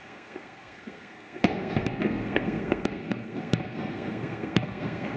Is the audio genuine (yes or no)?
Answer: no